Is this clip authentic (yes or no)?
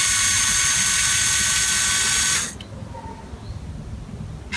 yes